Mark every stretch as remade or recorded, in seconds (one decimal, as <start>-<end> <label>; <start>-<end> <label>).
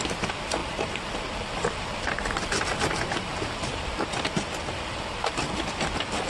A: 0.0-6.3 recorded